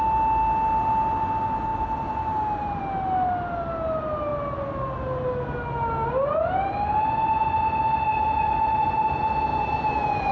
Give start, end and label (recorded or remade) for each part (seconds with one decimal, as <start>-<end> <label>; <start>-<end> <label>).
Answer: 0.0-1.7 recorded; 1.7-2.8 remade; 2.8-9.5 recorded; 9.5-10.3 remade